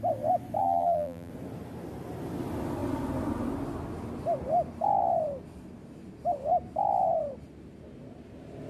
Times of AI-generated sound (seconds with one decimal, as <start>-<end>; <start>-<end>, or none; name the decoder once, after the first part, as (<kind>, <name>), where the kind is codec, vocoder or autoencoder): 0.6-1.3 (vocoder, BigVGAN v2)